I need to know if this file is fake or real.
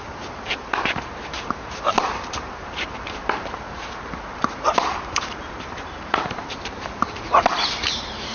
fake